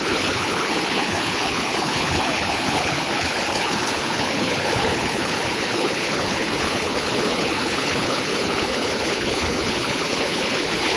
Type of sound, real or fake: fake